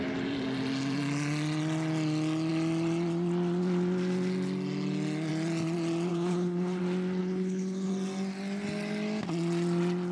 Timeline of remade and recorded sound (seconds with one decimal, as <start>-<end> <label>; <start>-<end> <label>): 0.0-6.1 recorded; 6.1-6.8 remade; 6.8-7.2 recorded; 7.2-7.9 remade; 7.9-10.1 recorded